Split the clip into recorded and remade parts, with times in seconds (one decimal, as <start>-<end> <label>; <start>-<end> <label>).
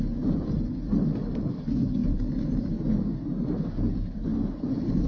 0.0-5.1 remade